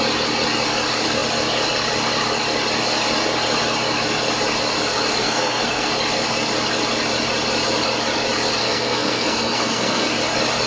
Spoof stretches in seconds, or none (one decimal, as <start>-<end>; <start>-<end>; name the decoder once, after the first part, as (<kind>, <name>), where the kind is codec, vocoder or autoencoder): 5.2-5.9 (codec, SNAC); 8.6-10.1

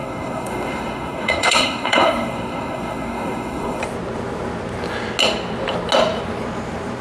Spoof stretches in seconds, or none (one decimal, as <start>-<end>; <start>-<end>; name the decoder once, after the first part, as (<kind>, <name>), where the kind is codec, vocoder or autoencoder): 0.0-3.8 (codec, SNAC)

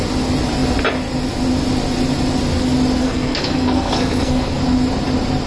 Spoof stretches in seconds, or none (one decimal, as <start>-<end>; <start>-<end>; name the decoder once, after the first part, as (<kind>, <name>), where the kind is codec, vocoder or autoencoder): 3.0-4.6 (codec, SNAC)

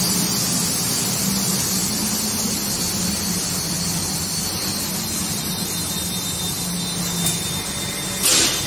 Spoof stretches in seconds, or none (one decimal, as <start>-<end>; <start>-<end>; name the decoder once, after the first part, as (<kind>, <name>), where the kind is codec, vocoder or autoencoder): none

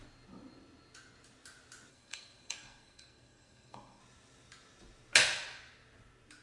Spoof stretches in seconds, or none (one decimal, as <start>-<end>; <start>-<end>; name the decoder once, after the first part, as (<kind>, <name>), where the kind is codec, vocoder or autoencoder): 1.9-4.0 (codec, SNAC)

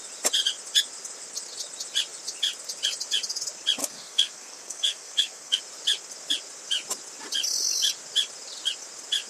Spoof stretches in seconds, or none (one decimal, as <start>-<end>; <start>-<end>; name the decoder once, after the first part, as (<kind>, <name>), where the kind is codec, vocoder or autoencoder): 3.8-5.6 (codec, SNAC)